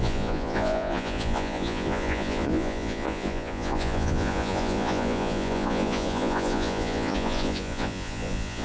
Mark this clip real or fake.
fake